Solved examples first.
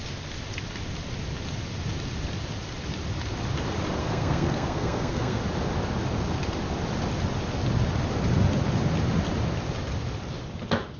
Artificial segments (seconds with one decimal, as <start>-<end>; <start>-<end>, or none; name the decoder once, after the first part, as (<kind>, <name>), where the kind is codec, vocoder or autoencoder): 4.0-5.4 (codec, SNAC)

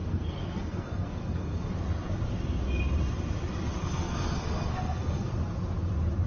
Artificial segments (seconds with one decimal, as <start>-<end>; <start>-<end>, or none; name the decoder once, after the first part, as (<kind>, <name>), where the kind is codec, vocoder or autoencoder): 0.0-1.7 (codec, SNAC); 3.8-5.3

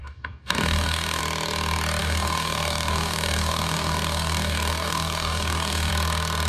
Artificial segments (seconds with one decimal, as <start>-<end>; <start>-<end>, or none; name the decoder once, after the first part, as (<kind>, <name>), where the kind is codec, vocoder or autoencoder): 0.0-1.2 (codec, DAC); 2.0-5.9